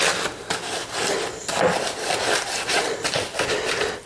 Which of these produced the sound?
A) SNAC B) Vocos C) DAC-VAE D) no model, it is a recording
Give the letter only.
D